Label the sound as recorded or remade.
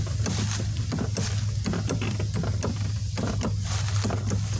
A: recorded